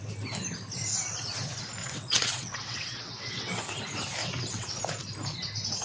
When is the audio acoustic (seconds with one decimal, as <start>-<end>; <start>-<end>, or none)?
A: 0.0-1.8; 3.6-4.2; 4.8-5.8